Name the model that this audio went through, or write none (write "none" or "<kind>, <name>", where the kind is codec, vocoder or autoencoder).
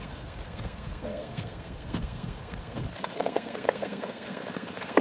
codec, SNAC